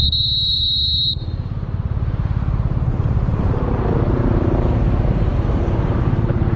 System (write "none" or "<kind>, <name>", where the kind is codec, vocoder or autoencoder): vocoder, BigVGAN v2